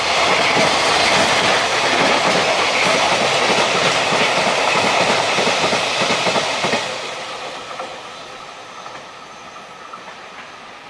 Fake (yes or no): no